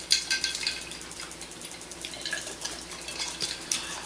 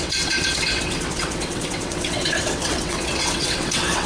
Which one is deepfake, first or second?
second